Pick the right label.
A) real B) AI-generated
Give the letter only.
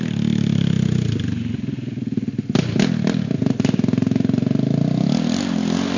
A